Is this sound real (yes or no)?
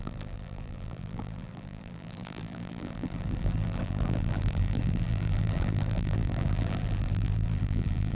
no